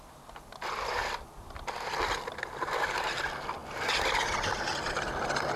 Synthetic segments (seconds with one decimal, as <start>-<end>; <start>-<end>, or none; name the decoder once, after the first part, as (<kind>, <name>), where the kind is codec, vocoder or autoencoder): none